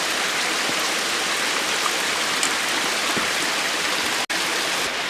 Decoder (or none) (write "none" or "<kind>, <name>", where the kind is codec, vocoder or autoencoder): none